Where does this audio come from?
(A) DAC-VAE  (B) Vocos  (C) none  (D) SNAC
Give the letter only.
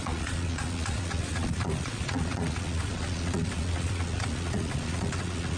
B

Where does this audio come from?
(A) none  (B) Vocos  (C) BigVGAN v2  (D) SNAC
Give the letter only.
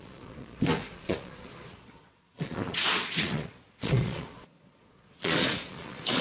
B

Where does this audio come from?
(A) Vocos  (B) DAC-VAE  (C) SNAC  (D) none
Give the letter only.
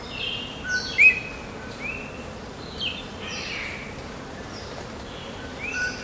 D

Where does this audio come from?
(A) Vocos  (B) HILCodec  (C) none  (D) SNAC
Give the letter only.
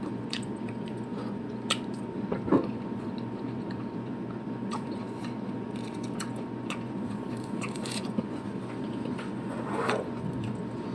A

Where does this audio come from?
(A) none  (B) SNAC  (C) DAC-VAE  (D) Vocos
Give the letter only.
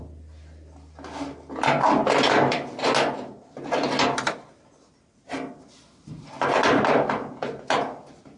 A